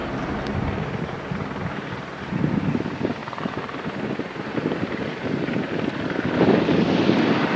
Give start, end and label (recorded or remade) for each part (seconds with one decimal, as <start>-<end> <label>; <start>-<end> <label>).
0.0-0.6 remade; 0.6-3.2 recorded; 3.2-6.2 remade; 6.2-7.6 recorded